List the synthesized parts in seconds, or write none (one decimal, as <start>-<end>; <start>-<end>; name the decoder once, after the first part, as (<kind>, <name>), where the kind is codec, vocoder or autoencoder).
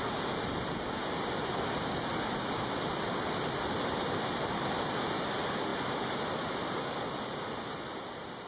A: none